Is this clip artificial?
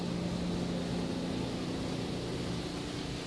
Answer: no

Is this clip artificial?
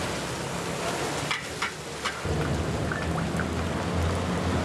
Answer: no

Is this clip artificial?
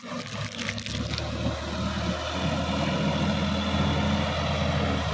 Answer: no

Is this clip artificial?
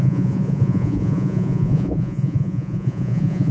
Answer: yes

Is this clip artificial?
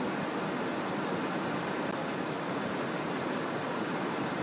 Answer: no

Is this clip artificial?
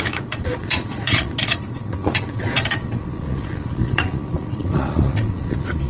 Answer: yes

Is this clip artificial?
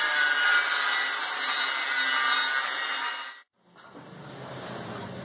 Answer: no